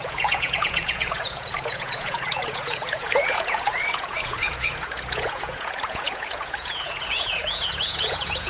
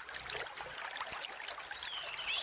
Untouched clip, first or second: second